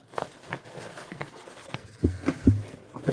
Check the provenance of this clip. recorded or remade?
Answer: remade